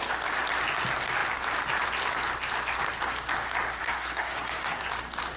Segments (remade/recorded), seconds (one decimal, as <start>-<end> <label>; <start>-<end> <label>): 0.0-3.8 recorded; 3.8-4.8 remade; 4.8-5.4 recorded